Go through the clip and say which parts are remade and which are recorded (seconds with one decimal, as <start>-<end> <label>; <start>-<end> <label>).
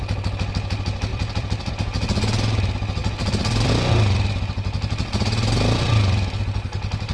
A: 0.0-1.1 recorded; 1.1-1.7 remade; 1.7-3.0 recorded; 3.0-3.7 remade; 3.7-7.1 recorded